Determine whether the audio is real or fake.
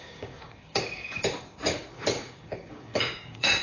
fake